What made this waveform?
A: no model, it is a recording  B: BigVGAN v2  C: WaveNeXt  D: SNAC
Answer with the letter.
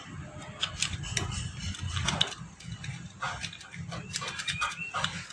A